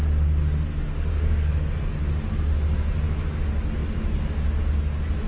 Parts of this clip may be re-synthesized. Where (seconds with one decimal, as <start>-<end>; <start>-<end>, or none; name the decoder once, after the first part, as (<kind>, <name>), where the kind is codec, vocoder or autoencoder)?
1.1-1.9 (codec, SNAC)